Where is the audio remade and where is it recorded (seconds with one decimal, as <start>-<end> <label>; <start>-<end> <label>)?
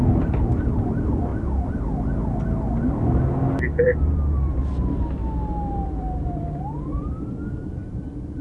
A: 0.0-1.3 remade; 1.3-3.8 recorded; 3.8-5.2 remade; 5.2-5.7 recorded; 5.7-8.4 remade